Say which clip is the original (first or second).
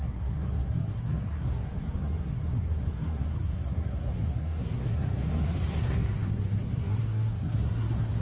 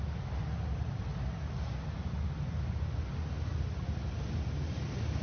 second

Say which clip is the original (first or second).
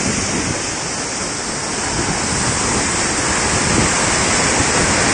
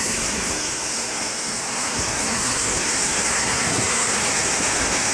first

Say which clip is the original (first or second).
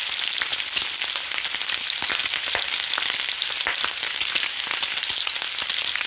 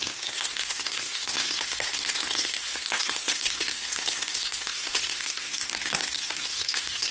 first